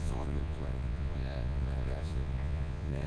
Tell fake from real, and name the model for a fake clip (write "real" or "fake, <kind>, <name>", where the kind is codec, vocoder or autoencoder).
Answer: fake, vocoder, Vocos